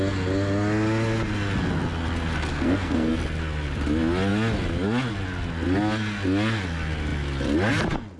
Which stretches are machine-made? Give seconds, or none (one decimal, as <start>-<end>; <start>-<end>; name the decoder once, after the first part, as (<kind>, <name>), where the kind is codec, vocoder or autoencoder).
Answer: 2.5-3.1 (codec, SNAC)